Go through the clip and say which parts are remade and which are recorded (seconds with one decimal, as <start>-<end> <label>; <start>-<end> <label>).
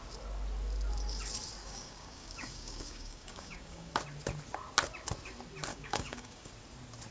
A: 0.0-1.6 recorded; 1.6-3.9 remade; 3.9-5.7 recorded; 5.7-6.5 remade; 6.5-7.1 recorded